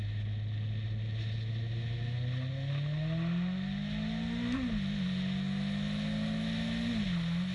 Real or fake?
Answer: real